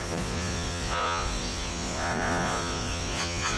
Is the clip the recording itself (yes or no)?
no